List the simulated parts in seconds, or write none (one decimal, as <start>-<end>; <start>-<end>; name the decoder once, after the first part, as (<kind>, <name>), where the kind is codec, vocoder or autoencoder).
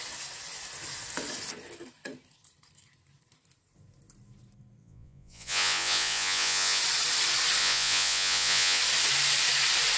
4.8-6.8 (vocoder, Vocos); 7.6-8.8